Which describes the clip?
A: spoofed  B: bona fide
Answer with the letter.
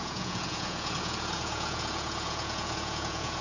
A